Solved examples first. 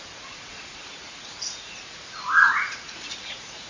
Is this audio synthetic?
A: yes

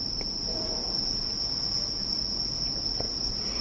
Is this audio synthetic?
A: no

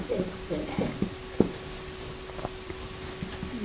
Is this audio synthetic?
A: no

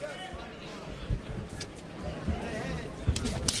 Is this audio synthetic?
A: no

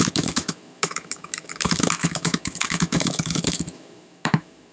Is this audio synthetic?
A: yes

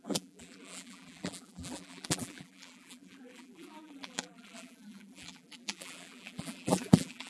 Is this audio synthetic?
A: yes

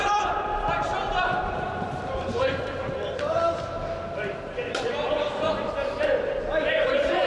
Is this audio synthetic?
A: yes